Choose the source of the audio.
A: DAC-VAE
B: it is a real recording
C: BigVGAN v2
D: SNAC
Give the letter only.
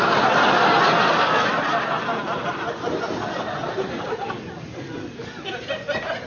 B